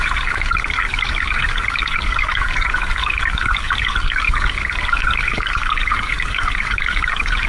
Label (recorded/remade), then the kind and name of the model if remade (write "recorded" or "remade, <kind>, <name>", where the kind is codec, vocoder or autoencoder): remade, codec, DAC